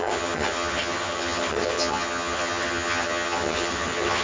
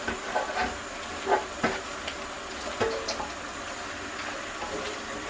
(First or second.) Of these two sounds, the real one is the second